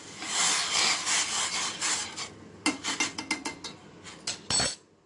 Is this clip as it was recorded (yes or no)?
yes